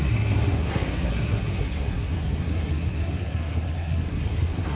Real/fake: fake